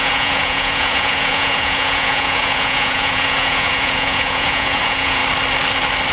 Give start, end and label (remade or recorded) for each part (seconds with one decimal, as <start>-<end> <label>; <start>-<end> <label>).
0.0-5.2 remade; 5.2-6.1 recorded